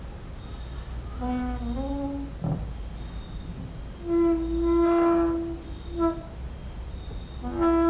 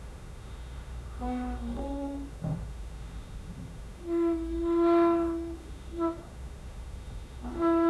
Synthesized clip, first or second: second